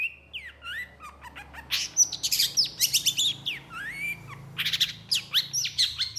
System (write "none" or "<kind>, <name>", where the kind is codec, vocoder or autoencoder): none